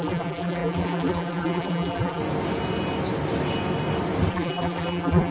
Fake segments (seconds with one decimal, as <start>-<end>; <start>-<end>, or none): 0.0-2.2; 4.3-5.3